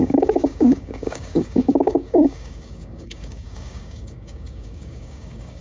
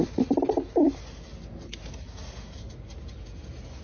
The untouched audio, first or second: second